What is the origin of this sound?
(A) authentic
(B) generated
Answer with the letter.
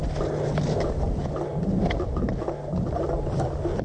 A